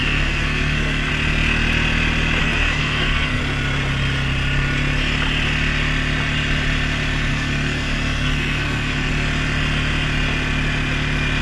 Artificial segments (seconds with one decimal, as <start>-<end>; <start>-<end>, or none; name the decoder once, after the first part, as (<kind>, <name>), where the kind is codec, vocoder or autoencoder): 0.0-1.1 (codec, SNAC); 2.4-3.4; 7.3-9.1